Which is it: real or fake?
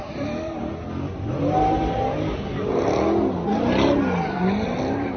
real